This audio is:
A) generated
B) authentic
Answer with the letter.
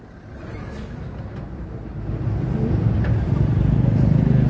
B